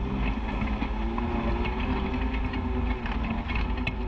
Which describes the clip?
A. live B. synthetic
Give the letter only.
A